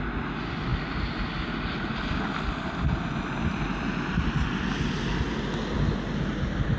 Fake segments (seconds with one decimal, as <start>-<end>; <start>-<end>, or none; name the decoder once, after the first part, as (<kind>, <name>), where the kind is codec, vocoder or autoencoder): none

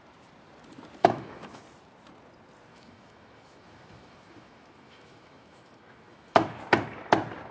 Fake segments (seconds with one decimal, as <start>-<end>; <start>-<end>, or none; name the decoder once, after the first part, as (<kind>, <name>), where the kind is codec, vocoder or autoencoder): 1.0-1.6 (autoencoder, DAC-VAE); 2.7-6.6

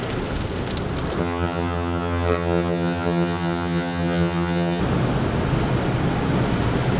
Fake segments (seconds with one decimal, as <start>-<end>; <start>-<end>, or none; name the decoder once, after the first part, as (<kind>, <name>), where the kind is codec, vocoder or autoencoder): 1.2-4.8 (vocoder, HiFi-GAN)

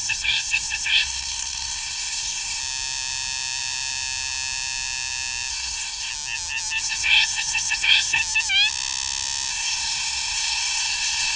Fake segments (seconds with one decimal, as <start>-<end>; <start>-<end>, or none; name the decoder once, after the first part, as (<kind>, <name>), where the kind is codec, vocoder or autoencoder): 0.0-2.6 (codec, SNAC); 5.5-6.1; 6.8-8.2; 9.5-11.4

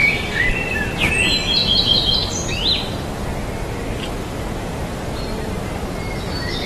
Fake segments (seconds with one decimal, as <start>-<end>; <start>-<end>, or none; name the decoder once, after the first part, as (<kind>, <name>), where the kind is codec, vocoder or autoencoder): 1.6-2.1 (vocoder, BigVGAN v2)